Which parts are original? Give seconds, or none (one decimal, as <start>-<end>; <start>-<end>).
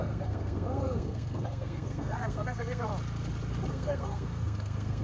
2.9-3.7